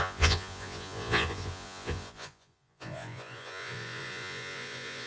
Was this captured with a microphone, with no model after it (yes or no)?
no